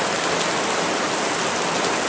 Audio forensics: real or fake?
real